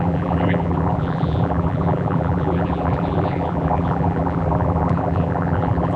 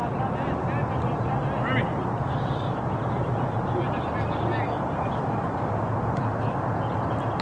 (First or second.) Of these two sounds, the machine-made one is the first